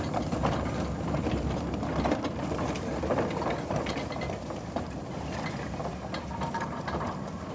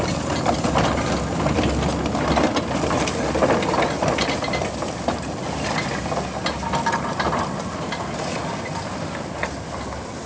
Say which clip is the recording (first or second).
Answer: second